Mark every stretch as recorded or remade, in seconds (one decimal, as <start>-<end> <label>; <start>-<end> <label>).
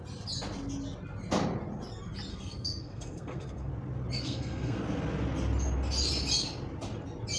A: 0.0-2.3 recorded; 2.3-3.7 remade; 3.7-4.2 recorded; 4.2-4.8 remade; 4.8-7.4 recorded